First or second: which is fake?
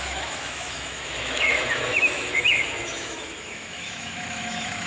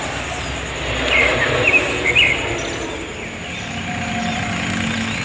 first